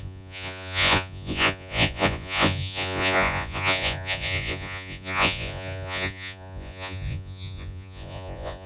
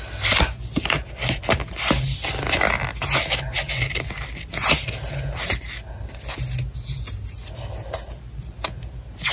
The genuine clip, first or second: second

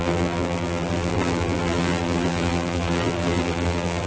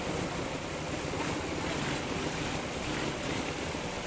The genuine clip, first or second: second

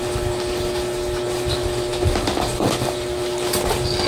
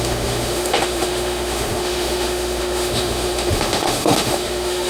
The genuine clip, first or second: first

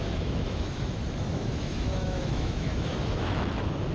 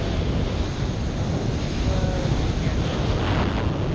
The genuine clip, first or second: second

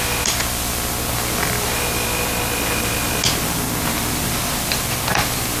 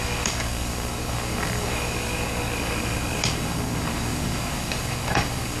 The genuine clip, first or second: first